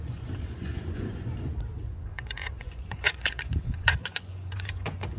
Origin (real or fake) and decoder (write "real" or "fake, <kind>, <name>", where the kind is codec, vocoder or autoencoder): fake, vocoder, Vocos